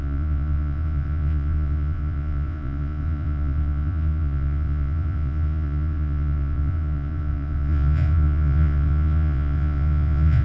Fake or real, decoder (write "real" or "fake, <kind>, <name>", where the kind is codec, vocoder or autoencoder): fake, vocoder, Vocos